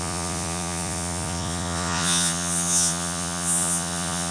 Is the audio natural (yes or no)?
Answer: no